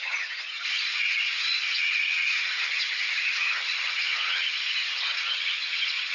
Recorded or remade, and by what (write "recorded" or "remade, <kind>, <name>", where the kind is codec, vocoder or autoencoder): remade, vocoder, HiFi-GAN